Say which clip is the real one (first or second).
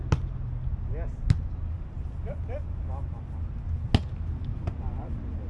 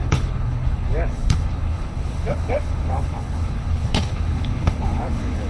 first